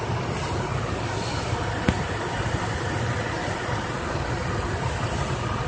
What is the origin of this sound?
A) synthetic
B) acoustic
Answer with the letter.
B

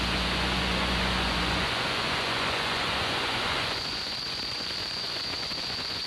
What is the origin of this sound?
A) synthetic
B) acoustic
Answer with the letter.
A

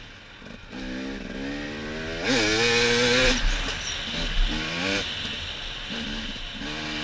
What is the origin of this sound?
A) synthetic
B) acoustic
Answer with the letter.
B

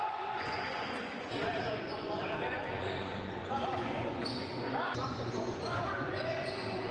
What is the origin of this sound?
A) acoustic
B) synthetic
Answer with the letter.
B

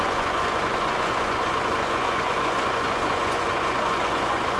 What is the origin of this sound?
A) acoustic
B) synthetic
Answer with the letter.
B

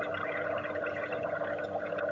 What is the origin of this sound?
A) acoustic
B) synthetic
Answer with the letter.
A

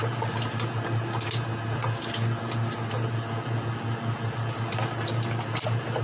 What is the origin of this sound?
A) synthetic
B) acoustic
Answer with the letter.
B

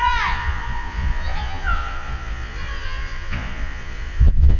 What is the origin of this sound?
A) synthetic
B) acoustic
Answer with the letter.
A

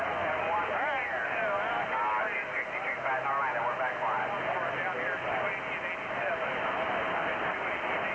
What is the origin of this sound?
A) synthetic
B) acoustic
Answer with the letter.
B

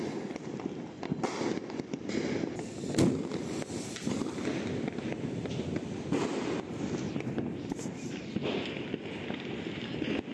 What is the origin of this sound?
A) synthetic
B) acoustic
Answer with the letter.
B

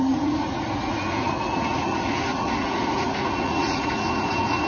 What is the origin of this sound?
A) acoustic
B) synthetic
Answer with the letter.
B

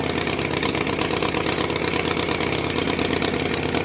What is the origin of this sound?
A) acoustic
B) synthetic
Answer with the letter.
A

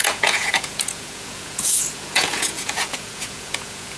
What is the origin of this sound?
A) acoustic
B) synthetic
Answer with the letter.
B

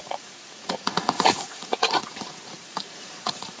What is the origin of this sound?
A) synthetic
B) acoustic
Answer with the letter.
A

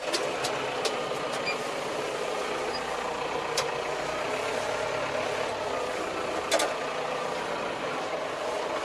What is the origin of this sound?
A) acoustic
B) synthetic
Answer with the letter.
A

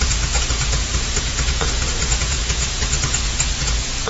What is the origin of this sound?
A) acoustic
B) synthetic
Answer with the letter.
B